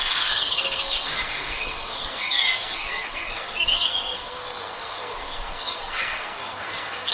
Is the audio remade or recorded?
remade